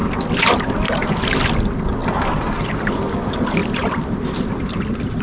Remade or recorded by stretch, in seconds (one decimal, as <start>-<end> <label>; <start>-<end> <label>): 0.0-2.0 recorded; 2.0-2.7 remade; 2.7-3.6 recorded; 3.6-4.5 remade; 4.5-5.2 recorded